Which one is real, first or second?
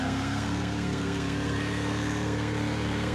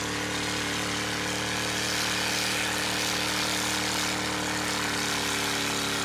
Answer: second